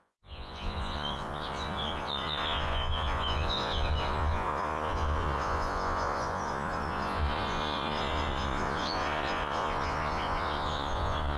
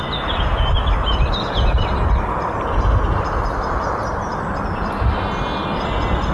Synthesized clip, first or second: first